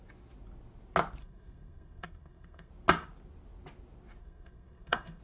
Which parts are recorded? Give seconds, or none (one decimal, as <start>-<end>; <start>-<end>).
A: 0.0-1.2; 2.7-4.2